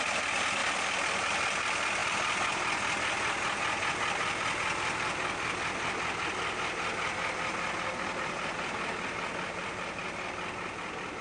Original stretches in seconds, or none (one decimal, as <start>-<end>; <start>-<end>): 0.0-0.6; 1.3-11.2